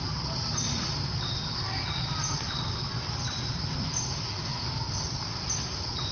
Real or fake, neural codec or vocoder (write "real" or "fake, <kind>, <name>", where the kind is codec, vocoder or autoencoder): real